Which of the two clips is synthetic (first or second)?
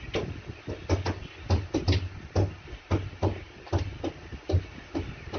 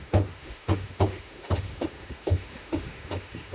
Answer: second